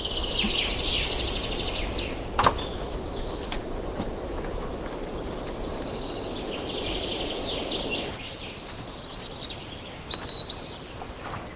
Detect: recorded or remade recorded